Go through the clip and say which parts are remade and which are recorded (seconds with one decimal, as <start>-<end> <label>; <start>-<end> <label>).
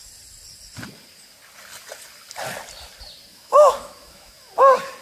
0.0-3.3 recorded; 3.3-4.5 remade; 4.5-5.0 recorded